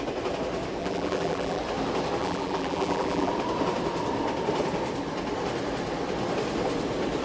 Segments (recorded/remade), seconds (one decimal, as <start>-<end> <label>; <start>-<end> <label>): 0.0-0.8 recorded; 0.8-1.6 remade; 1.6-2.2 recorded; 2.2-3.3 remade; 3.3-7.2 recorded